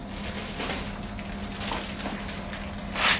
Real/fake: real